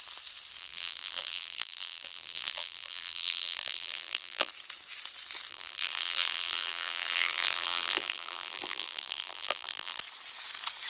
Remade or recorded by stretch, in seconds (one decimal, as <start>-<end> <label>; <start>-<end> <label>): 0.0-0.6 recorded; 0.6-4.5 remade; 4.5-5.5 recorded; 5.5-10.0 remade; 10.0-10.9 recorded